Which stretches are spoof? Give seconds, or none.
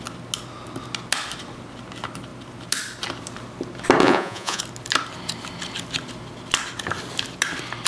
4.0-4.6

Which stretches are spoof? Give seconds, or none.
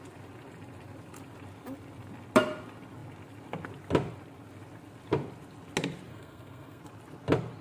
6.1-6.8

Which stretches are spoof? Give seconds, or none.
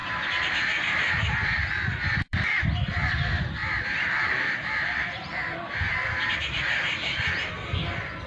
0.0-0.8; 2.1-3.1; 3.6-7.5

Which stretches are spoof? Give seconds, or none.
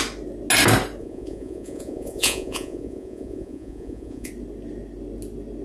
1.0-4.3